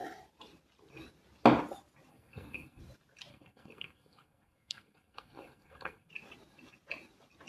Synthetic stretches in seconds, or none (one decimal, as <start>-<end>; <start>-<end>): 2.1-2.8; 3.3-6.1